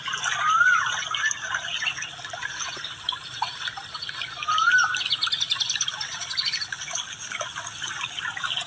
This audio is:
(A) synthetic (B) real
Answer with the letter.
B